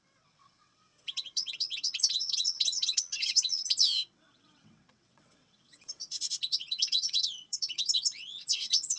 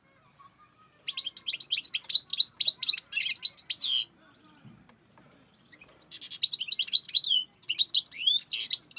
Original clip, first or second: second